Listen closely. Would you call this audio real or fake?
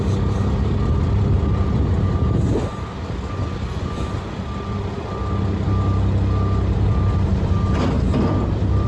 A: real